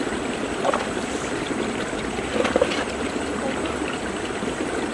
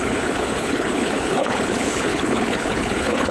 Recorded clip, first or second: first